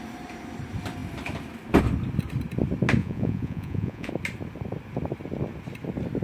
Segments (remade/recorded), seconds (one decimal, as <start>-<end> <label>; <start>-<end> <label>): 0.0-3.0 recorded; 3.0-4.1 remade; 4.1-6.2 recorded